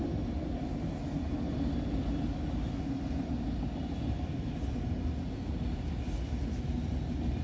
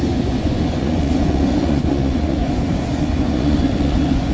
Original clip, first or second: first